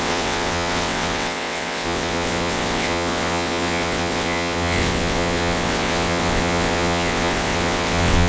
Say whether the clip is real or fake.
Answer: fake